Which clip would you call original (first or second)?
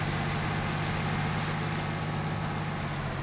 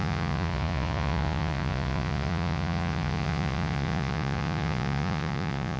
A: first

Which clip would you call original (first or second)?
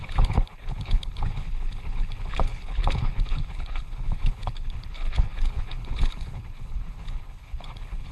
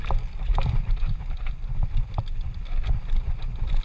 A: second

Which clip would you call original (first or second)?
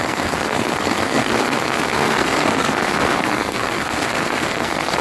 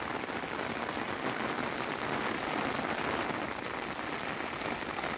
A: second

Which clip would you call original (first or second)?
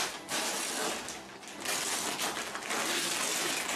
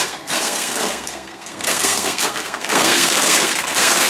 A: first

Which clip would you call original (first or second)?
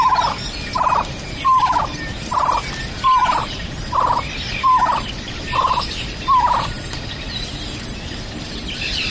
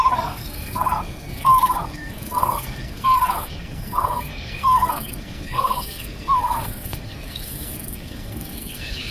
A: first